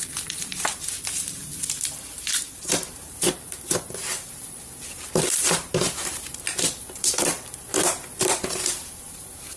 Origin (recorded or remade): remade